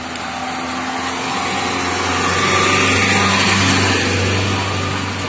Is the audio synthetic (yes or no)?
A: no